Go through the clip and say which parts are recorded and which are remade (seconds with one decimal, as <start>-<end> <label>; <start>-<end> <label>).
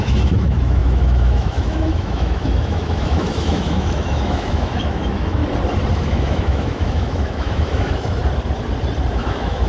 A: 0.0-5.4 remade; 5.4-5.9 recorded; 5.9-8.2 remade; 8.2-9.1 recorded; 9.1-9.7 remade